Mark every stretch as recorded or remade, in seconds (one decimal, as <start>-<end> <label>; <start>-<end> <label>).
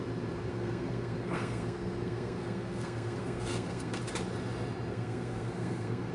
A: 0.0-0.5 recorded; 0.5-4.0 remade; 4.0-4.9 recorded; 4.9-6.1 remade